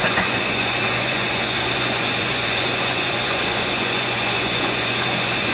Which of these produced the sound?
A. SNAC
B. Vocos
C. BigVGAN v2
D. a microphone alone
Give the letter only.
B